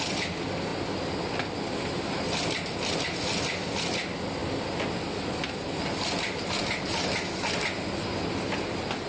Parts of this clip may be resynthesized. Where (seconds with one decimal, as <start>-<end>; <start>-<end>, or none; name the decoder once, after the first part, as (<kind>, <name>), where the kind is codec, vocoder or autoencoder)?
none